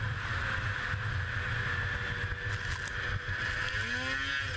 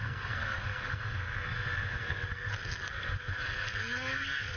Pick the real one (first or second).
first